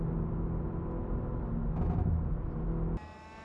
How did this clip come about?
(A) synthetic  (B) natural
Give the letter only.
B